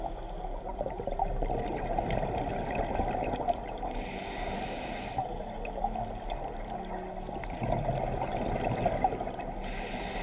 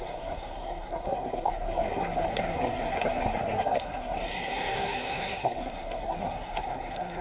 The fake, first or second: second